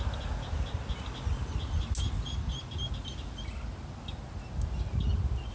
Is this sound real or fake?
real